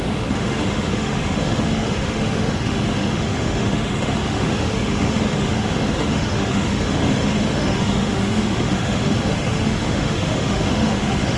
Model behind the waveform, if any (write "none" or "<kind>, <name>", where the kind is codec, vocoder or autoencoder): autoencoder, DAC-VAE